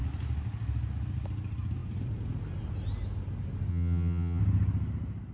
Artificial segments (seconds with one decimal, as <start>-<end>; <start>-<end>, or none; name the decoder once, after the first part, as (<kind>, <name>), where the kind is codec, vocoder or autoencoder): 3.7-4.4 (vocoder, HiFi-GAN)